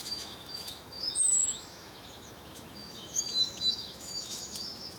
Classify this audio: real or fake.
fake